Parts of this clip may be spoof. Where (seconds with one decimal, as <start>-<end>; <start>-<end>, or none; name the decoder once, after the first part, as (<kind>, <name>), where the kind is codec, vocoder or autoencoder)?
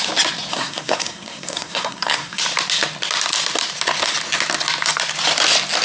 0.5-2.4 (codec, SNAC)